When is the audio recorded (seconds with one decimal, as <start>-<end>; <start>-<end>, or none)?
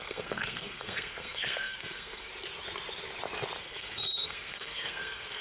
2.3-3.6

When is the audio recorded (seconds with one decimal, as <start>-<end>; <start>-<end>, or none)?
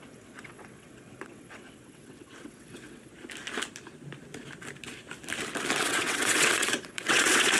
3.1-5.8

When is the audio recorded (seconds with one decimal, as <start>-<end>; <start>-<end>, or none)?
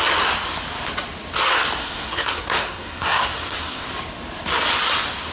0.0-1.8; 3.9-5.3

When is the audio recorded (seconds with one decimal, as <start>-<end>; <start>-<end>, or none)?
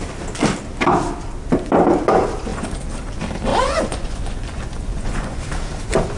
0.0-3.5; 5.4-6.2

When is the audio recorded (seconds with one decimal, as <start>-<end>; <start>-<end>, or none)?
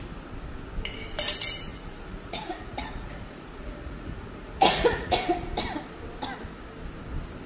0.0-1.7; 5.2-7.5